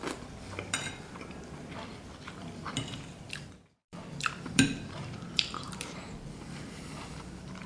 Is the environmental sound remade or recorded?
remade